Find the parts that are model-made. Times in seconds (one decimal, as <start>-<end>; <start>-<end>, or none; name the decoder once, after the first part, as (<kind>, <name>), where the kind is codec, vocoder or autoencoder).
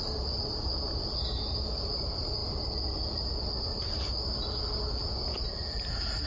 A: none